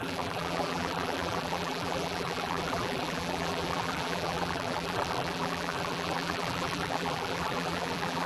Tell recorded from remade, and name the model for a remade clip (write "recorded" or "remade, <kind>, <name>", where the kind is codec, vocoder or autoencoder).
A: remade, vocoder, BigVGAN v2